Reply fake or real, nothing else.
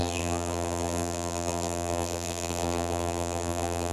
fake